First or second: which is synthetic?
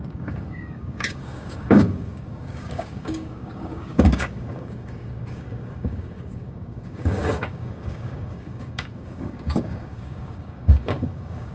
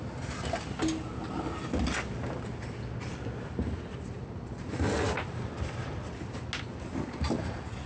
first